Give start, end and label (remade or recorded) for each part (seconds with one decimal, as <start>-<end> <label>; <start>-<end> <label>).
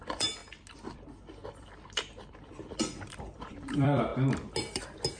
0.0-0.4 remade; 0.4-0.9 recorded; 0.9-1.4 remade; 1.4-2.3 recorded; 2.3-4.1 remade; 4.1-5.2 recorded